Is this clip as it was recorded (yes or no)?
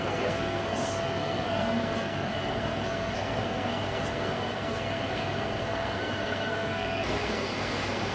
no